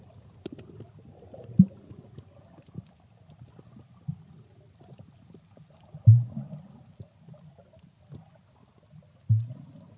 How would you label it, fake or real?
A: real